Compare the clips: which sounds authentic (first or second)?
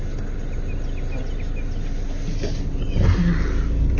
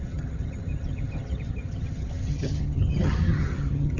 first